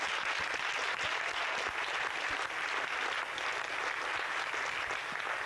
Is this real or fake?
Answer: real